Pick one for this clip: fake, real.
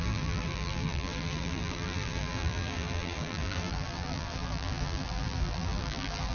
fake